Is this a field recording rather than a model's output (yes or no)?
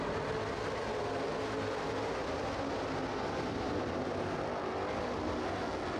yes